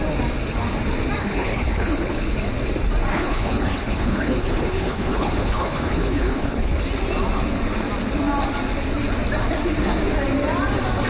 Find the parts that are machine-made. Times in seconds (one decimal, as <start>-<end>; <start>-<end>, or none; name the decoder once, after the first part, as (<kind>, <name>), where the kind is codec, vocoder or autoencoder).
1.2-2.2 (codec, HILCodec); 3.1-6.8